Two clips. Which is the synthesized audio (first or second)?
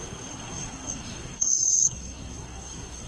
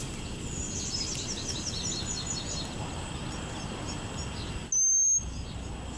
first